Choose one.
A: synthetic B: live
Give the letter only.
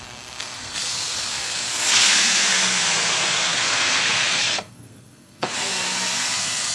A